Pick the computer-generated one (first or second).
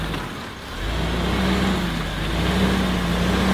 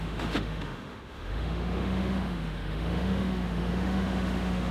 second